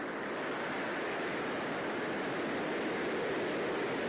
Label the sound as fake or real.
real